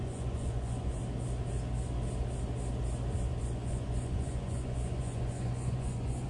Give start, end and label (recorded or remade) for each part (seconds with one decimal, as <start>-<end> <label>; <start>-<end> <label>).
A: 0.0-1.0 remade; 1.0-3.4 recorded; 3.4-6.3 remade